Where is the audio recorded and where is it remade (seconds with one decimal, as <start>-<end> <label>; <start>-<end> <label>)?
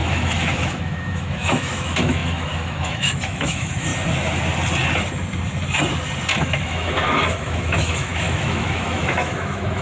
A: 0.0-3.9 remade; 3.9-6.4 recorded; 6.4-9.8 remade